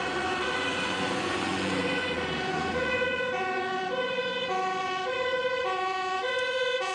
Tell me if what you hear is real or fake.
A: fake